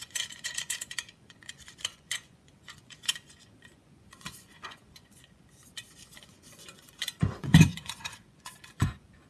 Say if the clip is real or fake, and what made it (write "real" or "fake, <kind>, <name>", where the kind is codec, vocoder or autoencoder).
fake, vocoder, Vocos